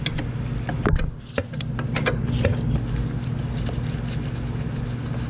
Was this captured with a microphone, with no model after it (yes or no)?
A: yes